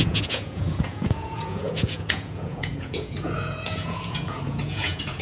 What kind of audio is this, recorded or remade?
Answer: remade